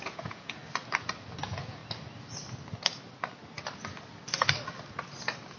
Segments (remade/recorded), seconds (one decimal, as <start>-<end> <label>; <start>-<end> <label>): 0.0-0.6 remade; 0.6-1.4 recorded; 1.4-1.8 remade; 1.8-5.6 recorded